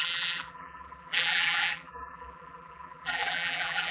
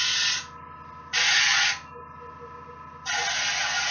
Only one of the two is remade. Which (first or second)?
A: first